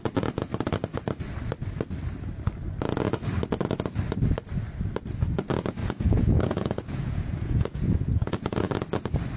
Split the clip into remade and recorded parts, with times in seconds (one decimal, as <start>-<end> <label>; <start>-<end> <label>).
0.0-5.8 recorded; 5.8-8.7 remade; 8.7-9.4 recorded